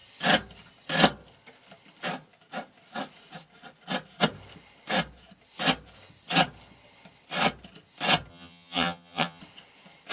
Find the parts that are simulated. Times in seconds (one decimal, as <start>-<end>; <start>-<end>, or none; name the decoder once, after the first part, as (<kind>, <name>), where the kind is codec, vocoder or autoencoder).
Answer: 8.3-9.4 (vocoder, HiFi-GAN)